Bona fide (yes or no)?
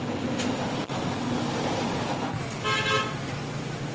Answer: yes